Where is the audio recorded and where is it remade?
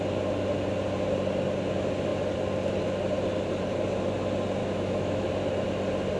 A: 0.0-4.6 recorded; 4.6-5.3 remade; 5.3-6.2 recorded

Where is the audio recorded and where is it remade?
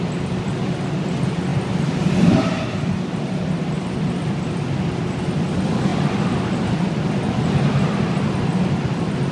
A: 0.0-1.5 recorded; 1.5-5.0 remade; 5.0-5.9 recorded; 5.9-7.1 remade; 7.1-9.3 recorded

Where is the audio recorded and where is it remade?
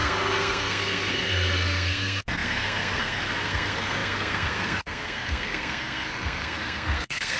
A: 0.0-7.4 remade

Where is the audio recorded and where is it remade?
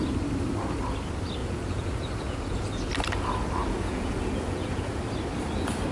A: 0.0-1.4 recorded; 1.4-2.9 remade; 2.9-3.6 recorded; 3.6-5.0 remade; 5.0-5.9 recorded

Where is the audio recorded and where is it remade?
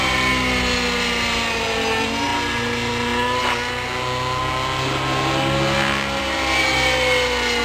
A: 0.0-7.6 recorded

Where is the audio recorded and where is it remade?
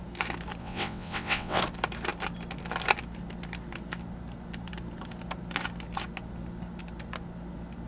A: 0.0-0.6 recorded; 0.6-1.6 remade; 1.6-7.9 recorded